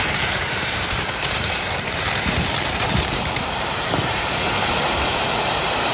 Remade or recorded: remade